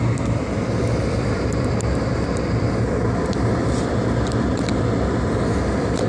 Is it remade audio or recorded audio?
remade